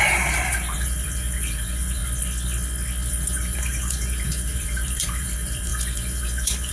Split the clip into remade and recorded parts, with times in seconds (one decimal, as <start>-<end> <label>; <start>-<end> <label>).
0.0-2.0 remade; 2.0-3.1 recorded; 3.1-6.7 remade